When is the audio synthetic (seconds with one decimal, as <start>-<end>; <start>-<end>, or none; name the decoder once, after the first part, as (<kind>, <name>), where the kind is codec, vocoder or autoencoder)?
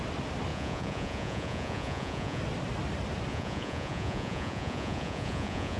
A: 0.5-2.4 (vocoder, Vocos); 3.3-5.8